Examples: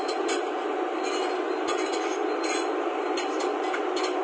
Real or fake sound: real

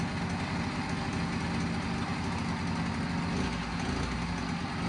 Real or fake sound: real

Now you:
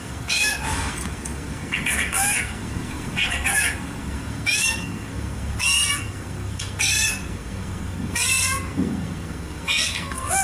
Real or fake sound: fake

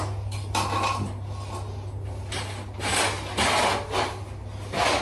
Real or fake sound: real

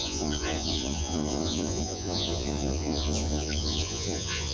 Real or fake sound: fake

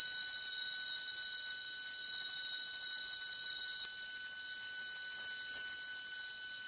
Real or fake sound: real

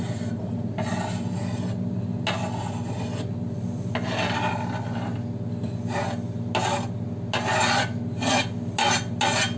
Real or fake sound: real